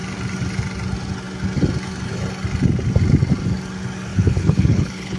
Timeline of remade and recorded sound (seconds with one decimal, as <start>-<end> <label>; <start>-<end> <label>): 0.0-4.1 recorded; 4.1-5.2 remade